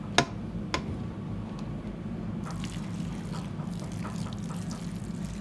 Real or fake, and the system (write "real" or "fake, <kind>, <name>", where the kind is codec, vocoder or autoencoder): real